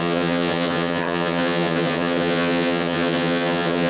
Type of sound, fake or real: fake